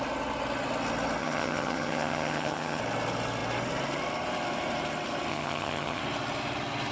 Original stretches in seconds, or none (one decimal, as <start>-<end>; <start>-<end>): 0.0-1.2; 2.8-5.3; 6.0-6.9